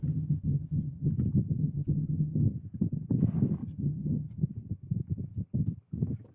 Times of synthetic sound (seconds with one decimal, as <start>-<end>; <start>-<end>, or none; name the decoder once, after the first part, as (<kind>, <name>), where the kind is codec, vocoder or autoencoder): 0.0-1.1 (vocoder, HiFi-GAN); 1.6-2.4; 3.6-4.4